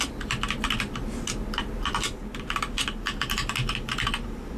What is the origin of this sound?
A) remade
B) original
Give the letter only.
B